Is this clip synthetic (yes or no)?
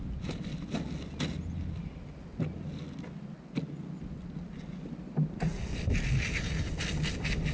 no